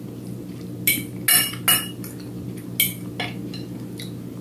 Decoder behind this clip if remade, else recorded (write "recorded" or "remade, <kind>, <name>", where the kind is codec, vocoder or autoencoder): recorded